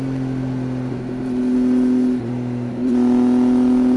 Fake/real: real